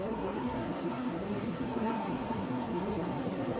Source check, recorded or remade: remade